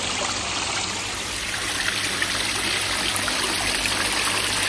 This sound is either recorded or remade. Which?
remade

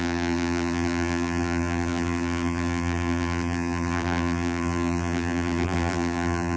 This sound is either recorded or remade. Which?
remade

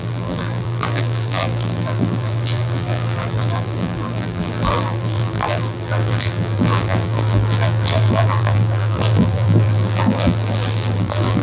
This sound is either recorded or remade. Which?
remade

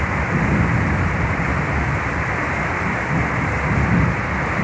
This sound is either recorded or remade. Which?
recorded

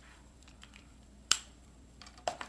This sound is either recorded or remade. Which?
remade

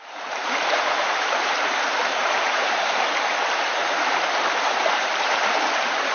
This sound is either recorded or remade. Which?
remade